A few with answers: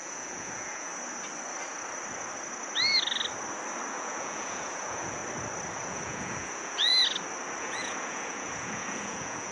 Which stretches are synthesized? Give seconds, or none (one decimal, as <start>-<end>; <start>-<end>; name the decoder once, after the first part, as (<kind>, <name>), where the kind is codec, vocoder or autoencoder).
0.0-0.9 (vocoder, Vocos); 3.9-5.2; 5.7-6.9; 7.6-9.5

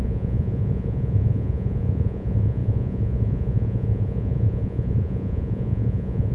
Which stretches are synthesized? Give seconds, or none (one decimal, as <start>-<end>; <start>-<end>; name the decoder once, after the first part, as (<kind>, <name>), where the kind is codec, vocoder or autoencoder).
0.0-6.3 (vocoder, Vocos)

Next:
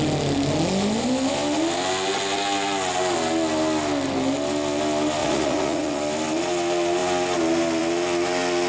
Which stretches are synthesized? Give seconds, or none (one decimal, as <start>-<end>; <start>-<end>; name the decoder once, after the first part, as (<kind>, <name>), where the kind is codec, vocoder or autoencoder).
5.2-6.0 (vocoder, Vocos)

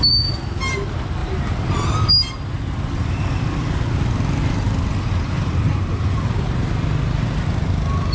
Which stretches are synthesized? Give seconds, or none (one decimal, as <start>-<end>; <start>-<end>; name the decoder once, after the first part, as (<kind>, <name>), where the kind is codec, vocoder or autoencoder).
none

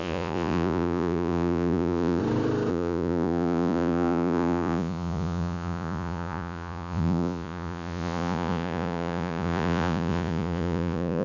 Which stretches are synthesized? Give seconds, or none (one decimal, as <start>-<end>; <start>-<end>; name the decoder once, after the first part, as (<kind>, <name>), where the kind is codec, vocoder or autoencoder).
0.0-2.2 (vocoder, Vocos); 2.7-11.2

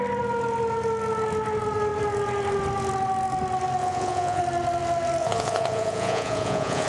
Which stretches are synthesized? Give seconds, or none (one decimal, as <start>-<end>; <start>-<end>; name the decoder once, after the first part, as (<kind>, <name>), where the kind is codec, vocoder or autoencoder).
3.8-4.4 (vocoder, Vocos); 5.2-6.9